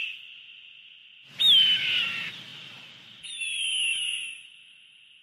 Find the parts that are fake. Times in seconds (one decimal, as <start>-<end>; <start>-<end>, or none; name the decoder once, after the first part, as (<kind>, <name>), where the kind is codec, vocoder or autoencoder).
none